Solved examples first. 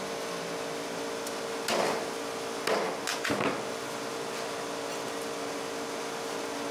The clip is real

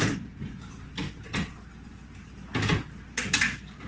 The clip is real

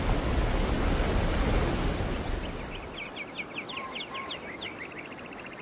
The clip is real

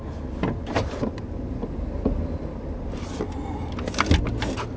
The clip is real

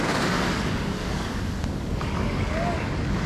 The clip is fake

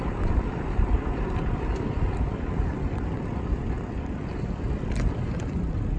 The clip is real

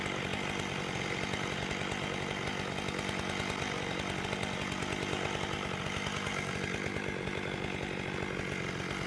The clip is real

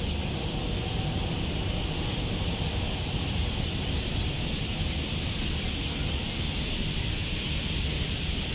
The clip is real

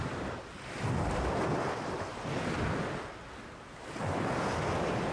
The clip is real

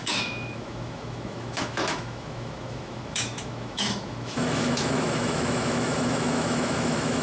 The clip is fake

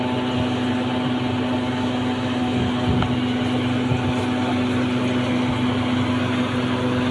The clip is real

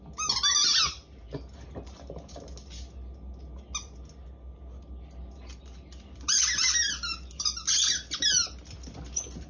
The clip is real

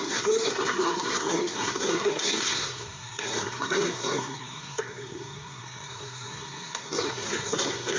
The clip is fake